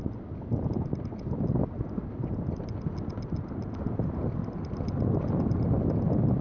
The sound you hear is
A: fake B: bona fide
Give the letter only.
B